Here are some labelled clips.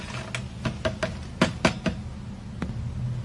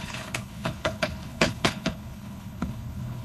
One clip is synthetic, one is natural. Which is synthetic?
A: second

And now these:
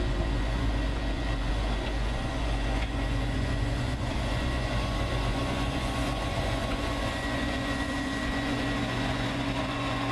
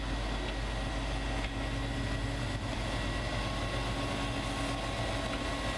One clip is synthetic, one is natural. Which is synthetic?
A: first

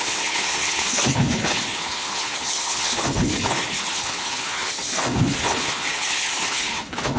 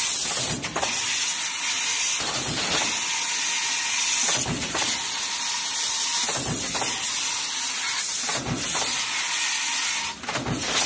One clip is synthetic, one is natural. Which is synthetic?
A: first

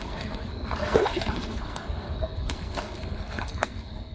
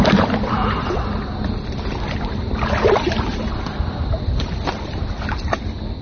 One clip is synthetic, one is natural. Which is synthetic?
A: first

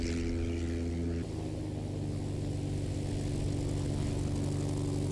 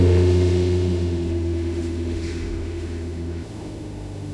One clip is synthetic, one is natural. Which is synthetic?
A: second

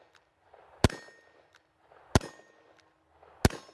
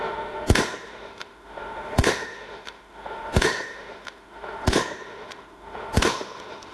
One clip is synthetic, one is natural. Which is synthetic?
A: second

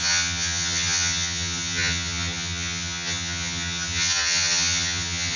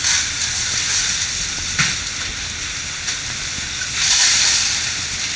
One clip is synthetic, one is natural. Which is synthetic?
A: first